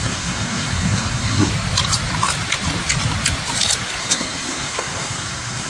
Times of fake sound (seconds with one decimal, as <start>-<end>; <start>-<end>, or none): 0.0-1.5; 4.0-5.7